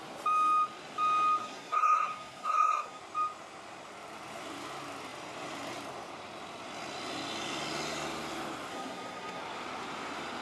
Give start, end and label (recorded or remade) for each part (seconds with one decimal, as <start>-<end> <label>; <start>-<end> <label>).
0.0-1.4 recorded; 1.4-3.0 remade; 3.0-8.7 recorded; 8.7-9.4 remade; 9.4-10.4 recorded